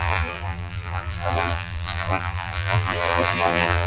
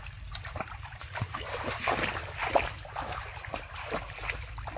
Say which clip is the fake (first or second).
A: first